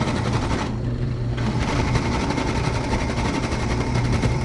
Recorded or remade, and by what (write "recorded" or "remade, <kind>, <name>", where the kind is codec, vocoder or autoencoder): remade, vocoder, BigVGAN v2